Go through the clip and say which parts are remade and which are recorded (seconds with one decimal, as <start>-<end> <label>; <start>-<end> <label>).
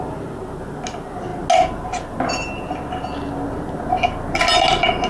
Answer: 0.0-5.1 recorded